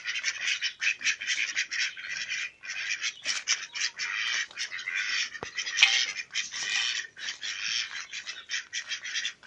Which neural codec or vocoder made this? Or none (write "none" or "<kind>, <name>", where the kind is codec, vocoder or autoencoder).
none